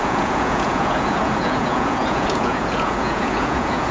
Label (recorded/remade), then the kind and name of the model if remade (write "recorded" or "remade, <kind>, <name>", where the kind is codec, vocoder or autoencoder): remade, vocoder, Vocos